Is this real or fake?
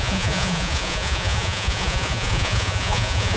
fake